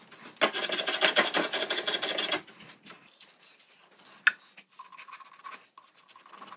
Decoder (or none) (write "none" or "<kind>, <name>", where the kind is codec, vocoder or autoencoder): none